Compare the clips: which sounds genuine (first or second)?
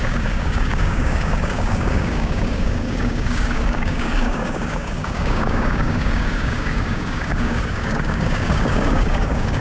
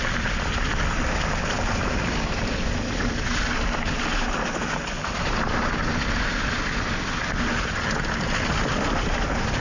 second